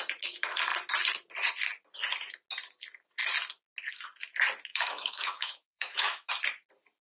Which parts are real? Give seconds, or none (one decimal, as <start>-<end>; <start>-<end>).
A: 0.0-4.7; 6.3-7.1

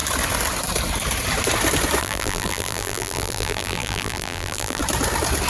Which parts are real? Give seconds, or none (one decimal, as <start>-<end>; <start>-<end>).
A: 0.0-2.0; 4.8-5.5

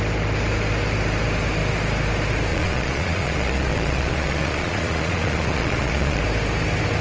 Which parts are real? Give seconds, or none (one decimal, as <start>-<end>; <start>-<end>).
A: 0.0-2.5; 6.2-7.0

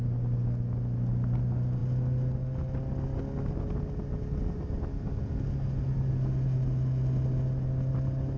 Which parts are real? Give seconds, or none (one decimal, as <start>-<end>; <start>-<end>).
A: 0.0-8.4

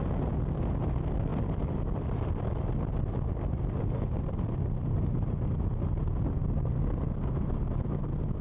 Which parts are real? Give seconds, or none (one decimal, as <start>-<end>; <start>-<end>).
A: 0.0-1.3; 5.8-8.4

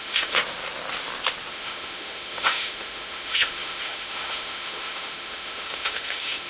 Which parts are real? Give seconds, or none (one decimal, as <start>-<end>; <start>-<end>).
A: 0.4-1.5

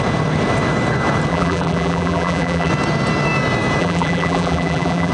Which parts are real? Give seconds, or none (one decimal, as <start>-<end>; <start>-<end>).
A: 0.0-1.3; 2.7-3.8